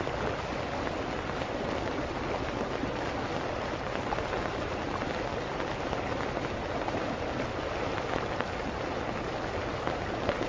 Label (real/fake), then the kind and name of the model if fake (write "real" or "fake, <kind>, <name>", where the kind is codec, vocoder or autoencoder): real